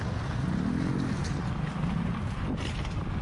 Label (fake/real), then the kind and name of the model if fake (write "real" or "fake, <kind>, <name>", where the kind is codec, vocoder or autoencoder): real